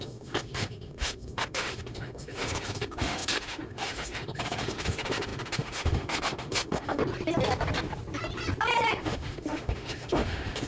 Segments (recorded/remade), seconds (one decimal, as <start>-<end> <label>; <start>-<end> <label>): 0.0-7.0 remade; 7.0-9.0 recorded; 9.0-10.7 remade